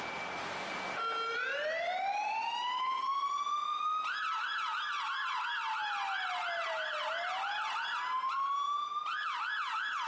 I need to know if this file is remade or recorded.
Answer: recorded